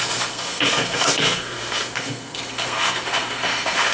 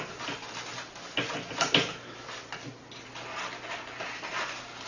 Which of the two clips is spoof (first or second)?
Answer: first